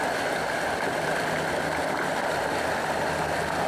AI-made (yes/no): no